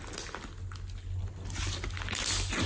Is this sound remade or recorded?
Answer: recorded